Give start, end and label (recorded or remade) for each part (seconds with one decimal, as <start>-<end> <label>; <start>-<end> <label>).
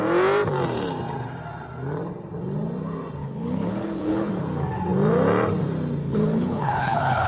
0.0-3.2 recorded; 3.2-4.3 remade; 4.3-6.0 recorded; 6.0-7.3 remade